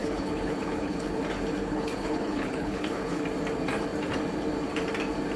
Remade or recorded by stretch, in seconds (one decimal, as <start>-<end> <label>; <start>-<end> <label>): 0.0-1.2 remade; 1.2-1.6 recorded; 1.6-3.2 remade; 3.2-5.4 recorded